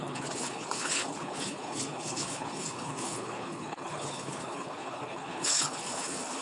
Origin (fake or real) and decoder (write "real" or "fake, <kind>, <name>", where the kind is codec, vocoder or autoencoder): fake, codec, HILCodec